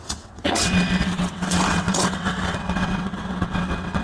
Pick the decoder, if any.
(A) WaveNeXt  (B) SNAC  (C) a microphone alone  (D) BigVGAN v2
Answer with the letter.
A